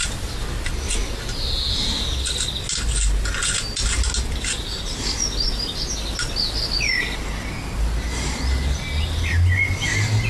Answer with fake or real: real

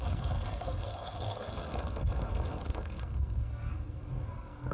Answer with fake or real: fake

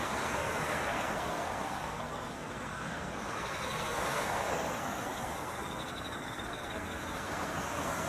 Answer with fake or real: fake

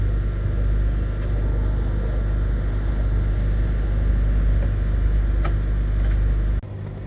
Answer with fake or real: real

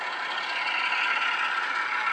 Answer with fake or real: real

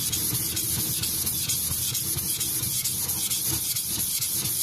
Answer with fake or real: real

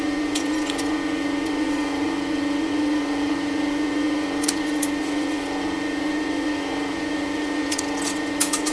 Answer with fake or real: fake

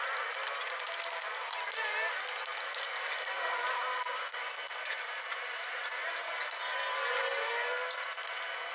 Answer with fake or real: real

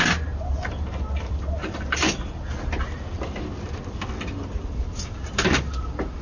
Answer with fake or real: real